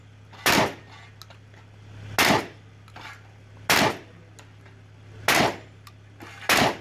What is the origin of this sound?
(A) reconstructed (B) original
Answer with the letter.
B